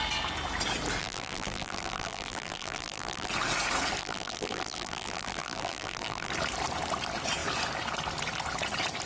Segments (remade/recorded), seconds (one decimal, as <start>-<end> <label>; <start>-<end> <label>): 0.0-1.0 recorded; 1.0-3.3 remade; 3.3-4.0 recorded; 4.0-6.3 remade; 6.3-9.1 recorded